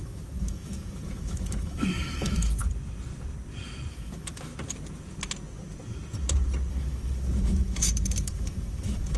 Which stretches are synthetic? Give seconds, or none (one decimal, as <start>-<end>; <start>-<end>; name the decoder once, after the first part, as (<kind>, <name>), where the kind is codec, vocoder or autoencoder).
0.0-2.6 (autoencoder, DAC-VAE); 3.9-4.5; 6.7-9.2